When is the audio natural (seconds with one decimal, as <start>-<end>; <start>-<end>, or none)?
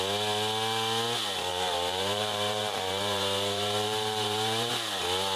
0.0-1.5; 4.7-5.4